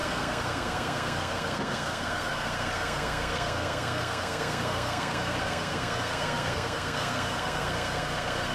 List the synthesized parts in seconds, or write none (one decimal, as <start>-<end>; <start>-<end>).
0.0-8.5